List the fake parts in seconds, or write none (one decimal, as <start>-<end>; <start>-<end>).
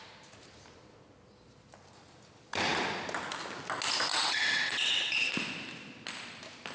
4.1-5.3